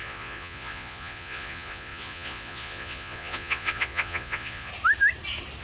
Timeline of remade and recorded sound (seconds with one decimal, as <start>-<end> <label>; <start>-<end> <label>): 0.0-4.7 remade; 4.7-5.6 recorded